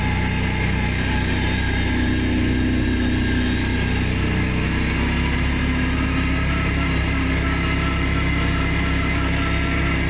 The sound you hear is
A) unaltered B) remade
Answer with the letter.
A